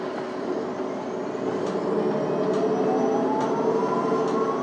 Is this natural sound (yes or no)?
yes